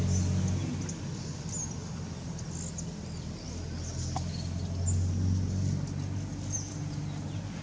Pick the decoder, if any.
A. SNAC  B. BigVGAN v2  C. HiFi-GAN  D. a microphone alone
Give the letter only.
D